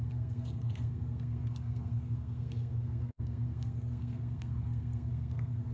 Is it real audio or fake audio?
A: fake